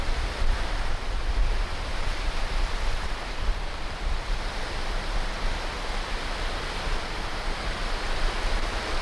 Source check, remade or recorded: remade